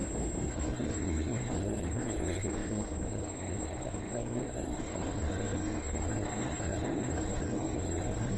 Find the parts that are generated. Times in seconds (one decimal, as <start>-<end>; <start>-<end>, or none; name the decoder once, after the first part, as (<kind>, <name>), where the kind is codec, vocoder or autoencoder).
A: 0.5-8.4 (codec, SNAC)